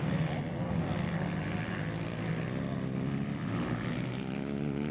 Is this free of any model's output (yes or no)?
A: yes